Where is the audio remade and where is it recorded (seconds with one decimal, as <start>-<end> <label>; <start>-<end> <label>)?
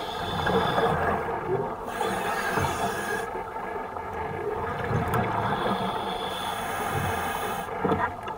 0.0-8.4 recorded